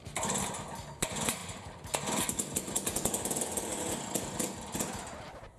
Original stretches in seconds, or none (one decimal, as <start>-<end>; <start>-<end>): 0.0-5.6